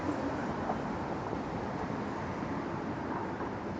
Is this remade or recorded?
recorded